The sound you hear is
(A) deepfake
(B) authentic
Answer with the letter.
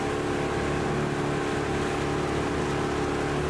B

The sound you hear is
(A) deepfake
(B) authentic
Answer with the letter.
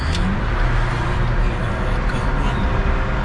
B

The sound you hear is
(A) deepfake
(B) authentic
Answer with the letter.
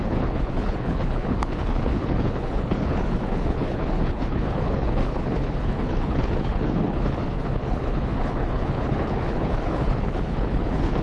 A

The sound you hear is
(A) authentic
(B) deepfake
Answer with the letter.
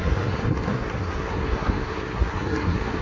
B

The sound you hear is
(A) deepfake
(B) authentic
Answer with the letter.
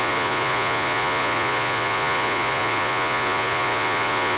A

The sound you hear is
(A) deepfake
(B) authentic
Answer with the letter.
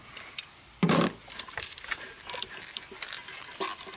B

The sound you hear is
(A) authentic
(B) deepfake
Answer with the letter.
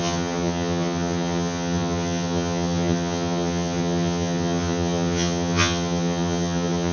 B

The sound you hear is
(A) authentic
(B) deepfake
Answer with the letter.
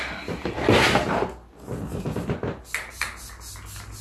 A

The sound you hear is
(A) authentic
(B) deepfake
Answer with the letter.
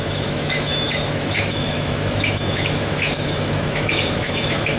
B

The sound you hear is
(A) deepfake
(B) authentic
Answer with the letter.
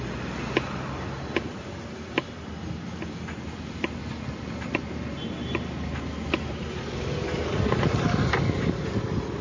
B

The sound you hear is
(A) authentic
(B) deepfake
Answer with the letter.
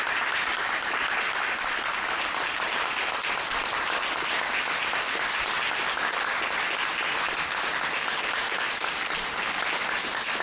A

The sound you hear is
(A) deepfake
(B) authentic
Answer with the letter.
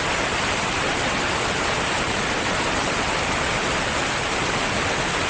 B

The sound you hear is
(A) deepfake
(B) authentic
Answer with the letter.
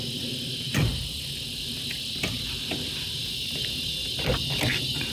B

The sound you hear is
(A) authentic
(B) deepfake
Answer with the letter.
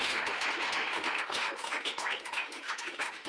B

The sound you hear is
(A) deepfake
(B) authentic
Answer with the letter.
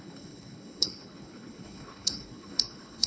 A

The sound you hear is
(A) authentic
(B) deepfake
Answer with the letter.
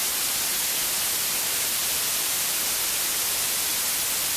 A